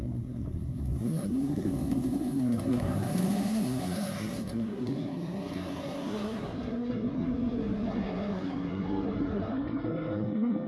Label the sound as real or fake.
fake